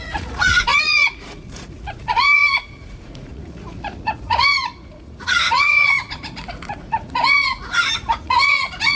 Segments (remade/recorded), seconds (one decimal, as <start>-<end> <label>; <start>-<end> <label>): 0.0-9.0 remade